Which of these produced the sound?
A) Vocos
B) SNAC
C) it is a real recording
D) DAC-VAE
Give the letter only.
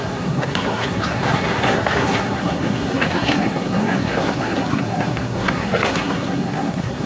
B